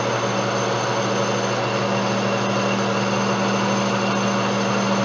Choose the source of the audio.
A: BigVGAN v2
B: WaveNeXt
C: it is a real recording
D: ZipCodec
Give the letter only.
C